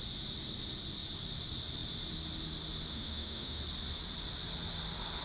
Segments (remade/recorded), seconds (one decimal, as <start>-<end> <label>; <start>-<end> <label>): 0.0-2.9 recorded; 2.9-3.6 remade; 3.6-5.2 recorded